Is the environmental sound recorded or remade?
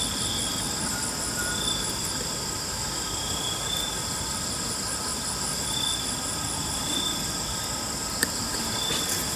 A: recorded